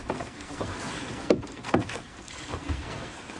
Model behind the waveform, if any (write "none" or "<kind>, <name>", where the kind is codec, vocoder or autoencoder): codec, SNAC